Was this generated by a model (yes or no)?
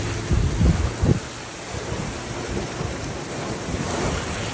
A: no